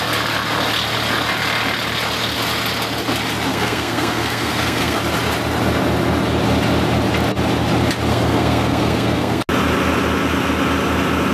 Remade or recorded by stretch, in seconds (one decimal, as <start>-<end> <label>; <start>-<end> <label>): 0.0-3.5 recorded; 3.5-5.0 remade; 5.0-8.1 recorded; 8.1-9.4 remade; 9.4-11.3 recorded